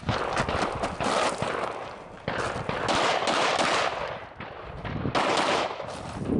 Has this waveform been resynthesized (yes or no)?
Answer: no